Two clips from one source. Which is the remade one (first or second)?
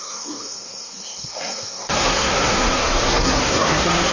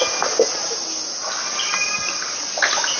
first